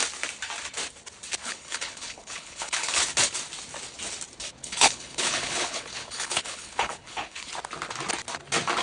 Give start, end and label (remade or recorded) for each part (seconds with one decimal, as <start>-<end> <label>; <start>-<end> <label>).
0.0-1.4 recorded; 1.4-3.0 remade; 3.0-4.6 recorded; 4.6-7.5 remade; 7.5-8.8 recorded